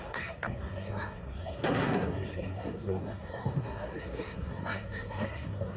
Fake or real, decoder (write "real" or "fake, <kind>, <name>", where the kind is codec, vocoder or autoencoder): fake, codec, SNAC